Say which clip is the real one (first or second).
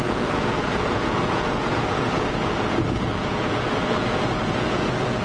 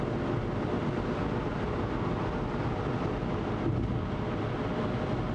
second